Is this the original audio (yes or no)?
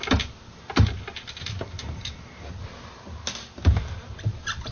yes